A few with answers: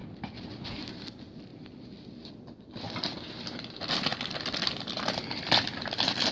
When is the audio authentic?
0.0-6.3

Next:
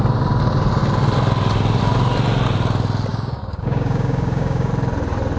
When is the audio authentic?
0.0-3.1; 4.7-5.4